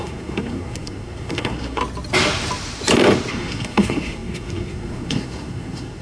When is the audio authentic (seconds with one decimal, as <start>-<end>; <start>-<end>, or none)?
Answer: 1.8-3.3